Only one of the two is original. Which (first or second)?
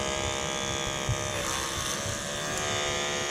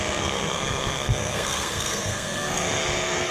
first